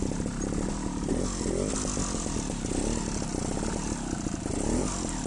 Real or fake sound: real